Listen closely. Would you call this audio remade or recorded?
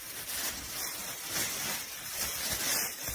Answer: remade